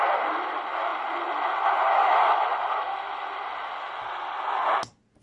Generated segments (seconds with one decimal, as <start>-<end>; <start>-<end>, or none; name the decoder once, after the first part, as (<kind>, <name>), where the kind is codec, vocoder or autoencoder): none